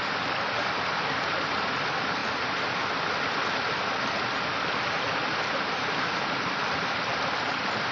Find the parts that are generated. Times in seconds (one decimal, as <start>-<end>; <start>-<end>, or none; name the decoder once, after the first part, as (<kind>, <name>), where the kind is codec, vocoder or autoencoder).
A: 0.0-2.2 (vocoder, BigVGAN v2); 6.3-7.9